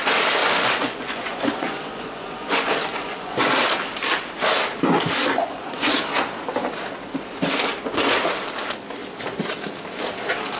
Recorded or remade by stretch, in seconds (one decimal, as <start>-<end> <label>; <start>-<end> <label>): 0.0-0.4 recorded; 0.4-3.5 remade; 3.5-5.3 recorded; 5.3-5.9 remade; 5.9-10.6 recorded